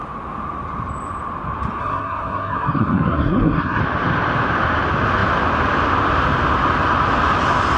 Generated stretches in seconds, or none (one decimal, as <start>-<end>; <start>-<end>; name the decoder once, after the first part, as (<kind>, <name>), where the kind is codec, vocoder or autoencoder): 1.8-3.8 (codec, SNAC)